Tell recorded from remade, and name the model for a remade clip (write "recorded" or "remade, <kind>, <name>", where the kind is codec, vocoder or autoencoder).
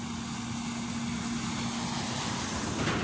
recorded